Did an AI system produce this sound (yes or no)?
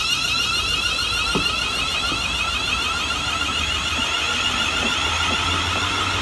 yes